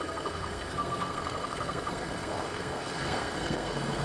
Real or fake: fake